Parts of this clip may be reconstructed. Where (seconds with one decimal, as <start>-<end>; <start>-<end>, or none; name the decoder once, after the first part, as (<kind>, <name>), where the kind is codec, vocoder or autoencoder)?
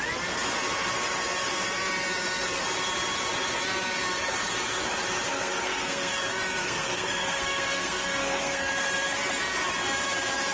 5.3-6.1 (codec, SNAC); 6.6-8.7